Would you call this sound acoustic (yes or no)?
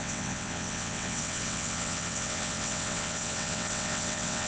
no